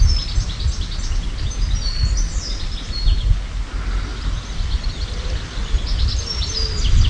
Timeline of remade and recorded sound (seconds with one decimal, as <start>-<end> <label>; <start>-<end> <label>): 0.0-7.1 recorded